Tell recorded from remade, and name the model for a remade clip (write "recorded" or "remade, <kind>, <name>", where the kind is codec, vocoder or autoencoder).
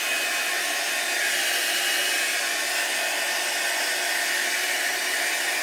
recorded